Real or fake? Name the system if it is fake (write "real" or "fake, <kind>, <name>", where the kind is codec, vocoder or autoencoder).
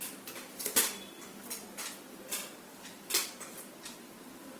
real